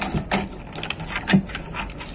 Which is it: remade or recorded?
recorded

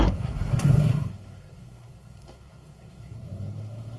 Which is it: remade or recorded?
remade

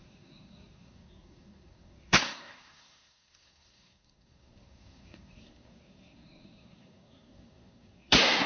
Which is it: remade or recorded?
remade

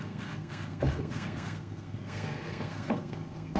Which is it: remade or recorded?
remade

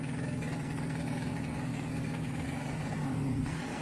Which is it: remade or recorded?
remade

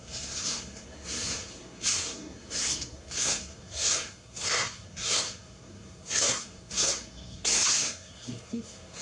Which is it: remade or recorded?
remade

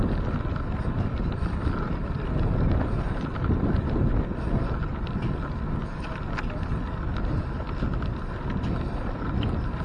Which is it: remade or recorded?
recorded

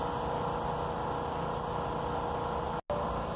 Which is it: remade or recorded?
recorded